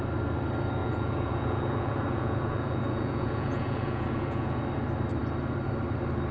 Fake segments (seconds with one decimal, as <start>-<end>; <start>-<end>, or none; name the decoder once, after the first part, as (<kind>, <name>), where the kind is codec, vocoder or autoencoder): 0.8-4.6 (vocoder, Vocos)